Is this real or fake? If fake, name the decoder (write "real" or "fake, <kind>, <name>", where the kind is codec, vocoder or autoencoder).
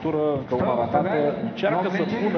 real